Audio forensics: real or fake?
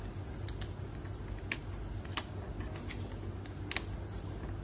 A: real